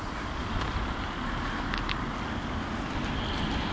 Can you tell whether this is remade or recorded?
recorded